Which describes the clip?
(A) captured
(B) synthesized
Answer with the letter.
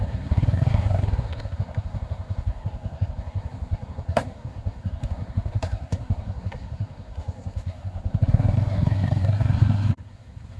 B